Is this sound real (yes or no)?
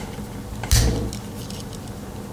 yes